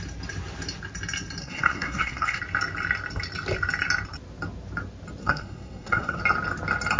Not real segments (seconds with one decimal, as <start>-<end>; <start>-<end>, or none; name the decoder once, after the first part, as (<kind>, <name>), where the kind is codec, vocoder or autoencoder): 1.4-2.4 (codec, SNAC); 5.2-6.2